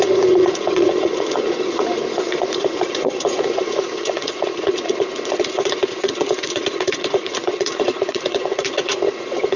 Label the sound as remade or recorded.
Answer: remade